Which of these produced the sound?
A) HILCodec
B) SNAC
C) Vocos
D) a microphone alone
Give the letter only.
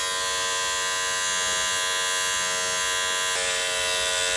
D